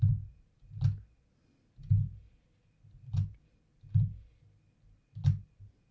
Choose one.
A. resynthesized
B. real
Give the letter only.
B